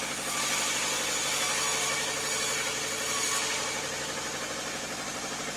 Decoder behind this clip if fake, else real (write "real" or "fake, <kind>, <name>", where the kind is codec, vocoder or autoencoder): real